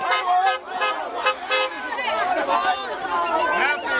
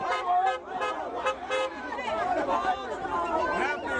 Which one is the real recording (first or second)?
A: first